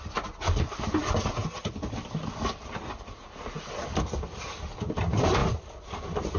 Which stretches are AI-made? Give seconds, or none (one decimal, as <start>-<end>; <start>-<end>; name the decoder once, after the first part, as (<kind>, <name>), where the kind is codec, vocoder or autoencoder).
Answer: none

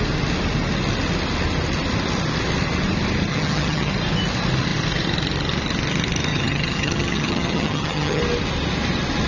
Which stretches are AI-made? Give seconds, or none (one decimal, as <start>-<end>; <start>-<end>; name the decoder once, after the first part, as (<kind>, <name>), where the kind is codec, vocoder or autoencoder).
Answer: 3.3-3.9 (vocoder, HiFi-GAN); 6.3-8.2

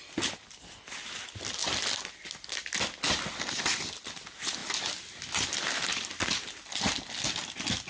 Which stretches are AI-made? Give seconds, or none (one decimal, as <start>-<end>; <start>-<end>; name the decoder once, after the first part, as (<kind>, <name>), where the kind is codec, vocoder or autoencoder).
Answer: none

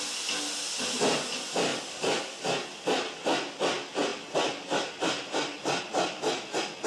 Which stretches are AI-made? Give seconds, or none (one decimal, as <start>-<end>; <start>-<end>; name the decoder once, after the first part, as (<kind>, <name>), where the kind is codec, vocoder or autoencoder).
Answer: 1.7-2.2 (vocoder, BigVGAN v2); 4.1-5.8

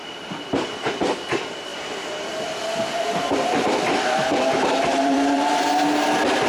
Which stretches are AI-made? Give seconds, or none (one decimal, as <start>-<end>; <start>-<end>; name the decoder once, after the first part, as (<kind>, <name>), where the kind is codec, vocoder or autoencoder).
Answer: 0.0-1.0 (vocoder, BigVGAN v2); 1.7-5.6

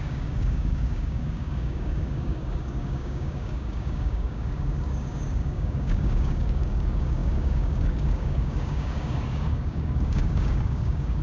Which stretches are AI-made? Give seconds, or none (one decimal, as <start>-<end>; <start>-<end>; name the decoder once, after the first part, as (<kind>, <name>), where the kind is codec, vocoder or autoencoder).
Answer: 0.0-11.2 (codec, DAC)